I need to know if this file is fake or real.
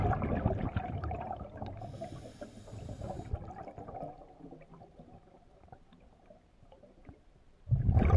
fake